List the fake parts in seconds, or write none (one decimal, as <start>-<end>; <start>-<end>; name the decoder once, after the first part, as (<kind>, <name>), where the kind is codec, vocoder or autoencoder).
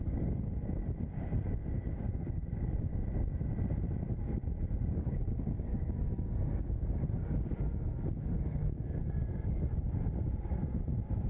0.0-2.9 (codec, DAC); 4.1-11.3